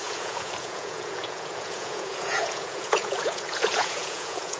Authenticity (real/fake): fake